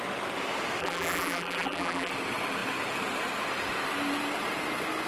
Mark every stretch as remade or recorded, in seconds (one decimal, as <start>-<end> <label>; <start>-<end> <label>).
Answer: 0.0-0.8 recorded; 0.8-2.1 remade; 2.1-5.1 recorded